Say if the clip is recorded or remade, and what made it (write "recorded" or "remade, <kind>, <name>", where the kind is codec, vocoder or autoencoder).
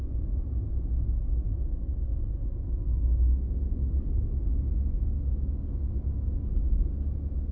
recorded